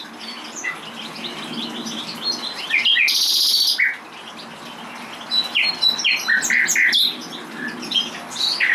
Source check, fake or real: real